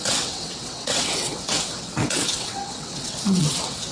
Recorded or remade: remade